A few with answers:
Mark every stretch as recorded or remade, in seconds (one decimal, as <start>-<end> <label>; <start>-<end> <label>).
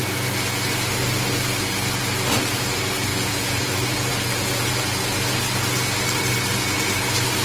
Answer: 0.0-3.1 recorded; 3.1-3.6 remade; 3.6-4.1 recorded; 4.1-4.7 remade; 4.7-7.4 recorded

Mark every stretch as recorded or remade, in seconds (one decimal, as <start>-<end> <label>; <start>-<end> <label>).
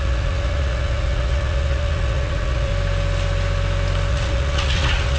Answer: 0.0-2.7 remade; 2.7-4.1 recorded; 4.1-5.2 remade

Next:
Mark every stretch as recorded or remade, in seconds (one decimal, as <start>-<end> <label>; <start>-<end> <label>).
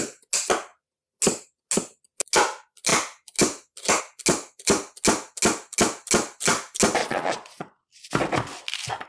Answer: 0.0-7.0 recorded; 7.0-8.0 remade; 8.0-9.1 recorded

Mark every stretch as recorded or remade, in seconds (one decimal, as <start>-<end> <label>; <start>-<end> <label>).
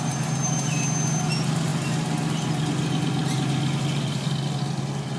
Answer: 0.0-5.2 recorded